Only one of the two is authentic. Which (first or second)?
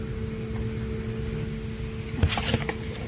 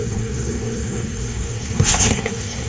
first